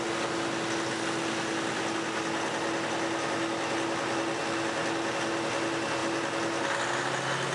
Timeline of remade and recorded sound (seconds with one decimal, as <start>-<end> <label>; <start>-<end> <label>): 0.0-7.5 recorded